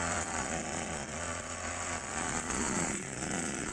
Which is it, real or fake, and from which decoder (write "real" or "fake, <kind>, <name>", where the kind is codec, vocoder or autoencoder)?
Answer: fake, vocoder, Vocos